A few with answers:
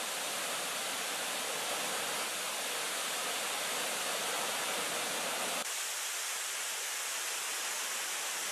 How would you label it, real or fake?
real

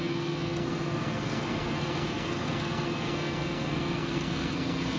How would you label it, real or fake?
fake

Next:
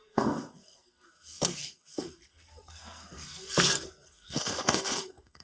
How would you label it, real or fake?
fake